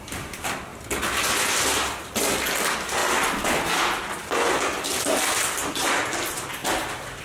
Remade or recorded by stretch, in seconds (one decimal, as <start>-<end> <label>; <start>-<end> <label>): 0.0-0.7 remade; 0.7-1.4 recorded; 1.4-3.0 remade; 3.0-4.6 recorded; 4.6-7.2 remade